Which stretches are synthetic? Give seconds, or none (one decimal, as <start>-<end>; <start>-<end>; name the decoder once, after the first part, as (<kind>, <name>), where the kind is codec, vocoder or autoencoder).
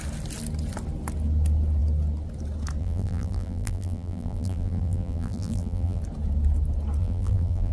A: 2.8-6.0 (vocoder, BigVGAN v2); 7.0-7.7